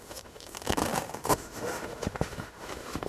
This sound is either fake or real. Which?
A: fake